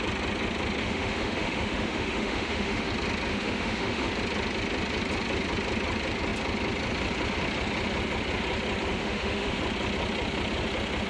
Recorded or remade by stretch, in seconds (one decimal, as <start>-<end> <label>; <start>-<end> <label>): 0.0-0.8 recorded; 0.8-2.9 remade; 2.9-3.3 recorded; 3.3-4.1 remade; 4.1-8.9 recorded; 8.9-9.6 remade; 9.6-11.1 recorded